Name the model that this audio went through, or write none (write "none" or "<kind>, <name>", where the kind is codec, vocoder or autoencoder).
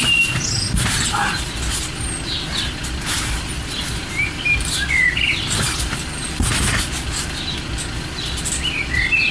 none